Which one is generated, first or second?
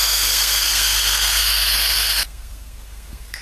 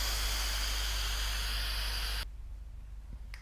first